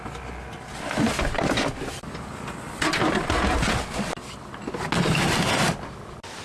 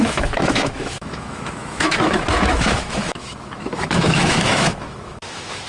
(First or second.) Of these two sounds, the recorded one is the first